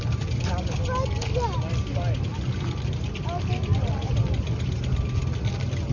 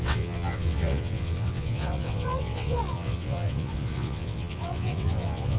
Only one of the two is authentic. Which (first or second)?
first